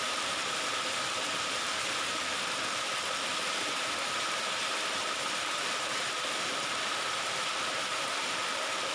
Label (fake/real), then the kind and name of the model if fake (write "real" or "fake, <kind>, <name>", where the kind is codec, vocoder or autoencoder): fake, vocoder, BigVGAN v2